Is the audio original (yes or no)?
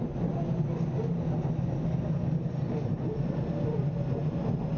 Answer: yes